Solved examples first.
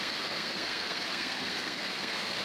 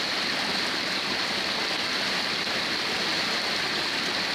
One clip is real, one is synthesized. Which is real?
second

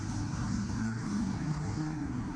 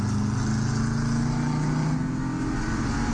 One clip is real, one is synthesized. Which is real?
second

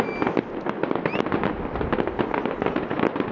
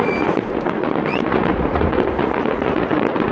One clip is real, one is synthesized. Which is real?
first